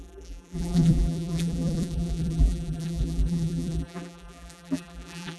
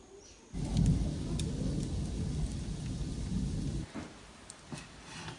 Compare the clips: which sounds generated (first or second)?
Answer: first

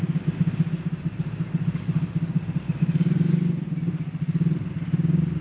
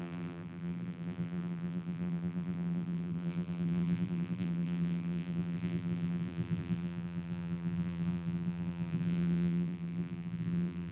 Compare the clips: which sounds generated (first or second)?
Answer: second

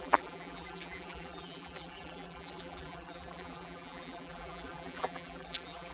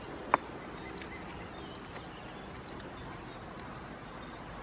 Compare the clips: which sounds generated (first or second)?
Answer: first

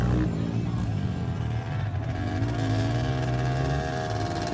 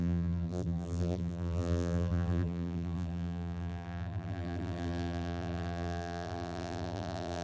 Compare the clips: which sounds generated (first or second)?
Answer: second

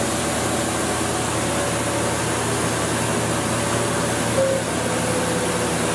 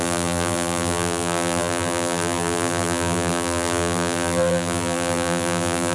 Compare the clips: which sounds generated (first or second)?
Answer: second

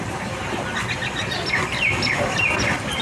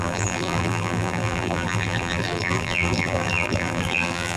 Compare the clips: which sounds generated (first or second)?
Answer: second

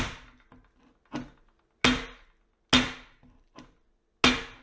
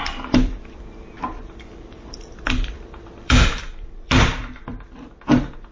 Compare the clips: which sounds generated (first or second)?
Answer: second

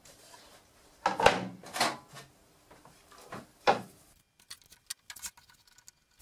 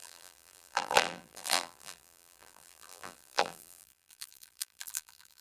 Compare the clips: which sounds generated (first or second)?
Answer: second